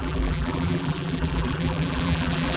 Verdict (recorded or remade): remade